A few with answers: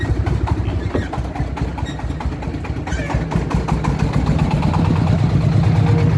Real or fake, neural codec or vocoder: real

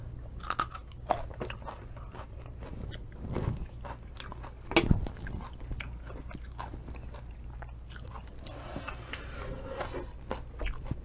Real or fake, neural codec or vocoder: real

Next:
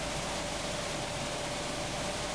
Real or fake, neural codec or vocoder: real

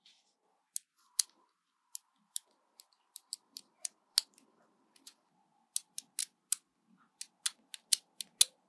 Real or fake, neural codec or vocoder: real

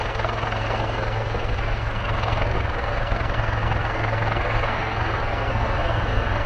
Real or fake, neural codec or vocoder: fake, codec, SNAC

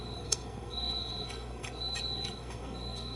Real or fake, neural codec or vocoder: fake, codec, SNAC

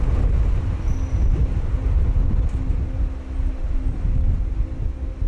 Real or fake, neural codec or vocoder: real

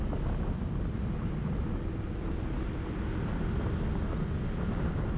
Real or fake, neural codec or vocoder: real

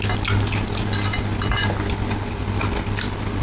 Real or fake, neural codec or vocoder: real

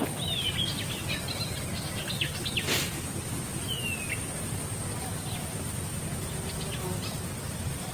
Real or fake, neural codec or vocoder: real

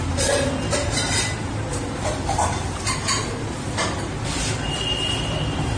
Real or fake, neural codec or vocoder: real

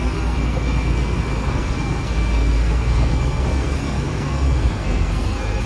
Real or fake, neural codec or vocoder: fake, codec, SNAC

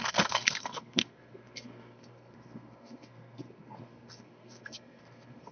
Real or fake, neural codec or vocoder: fake, codec, SNAC